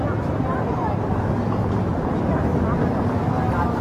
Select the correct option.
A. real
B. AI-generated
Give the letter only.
A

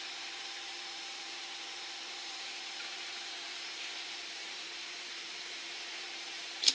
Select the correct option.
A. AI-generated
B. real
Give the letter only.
A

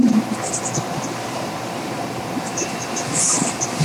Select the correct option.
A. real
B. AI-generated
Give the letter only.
A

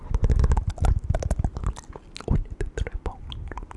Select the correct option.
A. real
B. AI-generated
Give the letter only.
A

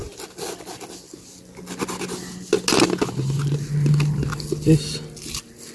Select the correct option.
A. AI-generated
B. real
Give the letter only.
B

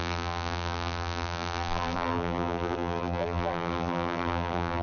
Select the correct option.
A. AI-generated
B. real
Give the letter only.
A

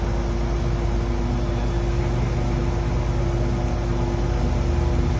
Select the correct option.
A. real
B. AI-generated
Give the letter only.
A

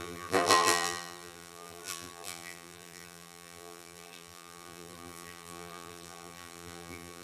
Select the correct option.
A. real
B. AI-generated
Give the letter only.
B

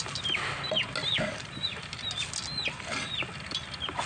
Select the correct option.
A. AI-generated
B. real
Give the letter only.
B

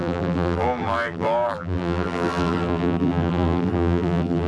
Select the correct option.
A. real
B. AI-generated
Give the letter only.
B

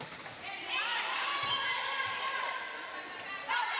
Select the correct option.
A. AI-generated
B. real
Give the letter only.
A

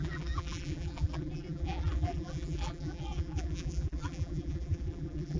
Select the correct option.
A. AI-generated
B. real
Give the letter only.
A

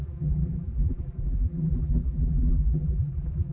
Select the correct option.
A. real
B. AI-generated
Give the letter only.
B